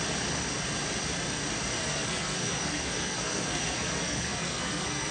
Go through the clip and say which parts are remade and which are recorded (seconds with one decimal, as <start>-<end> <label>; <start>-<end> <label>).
0.0-1.8 recorded; 1.8-5.1 remade